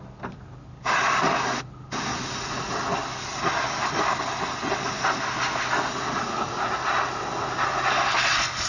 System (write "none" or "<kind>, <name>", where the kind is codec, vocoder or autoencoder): none